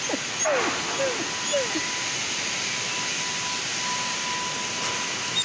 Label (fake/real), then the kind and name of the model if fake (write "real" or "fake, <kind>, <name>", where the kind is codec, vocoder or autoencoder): real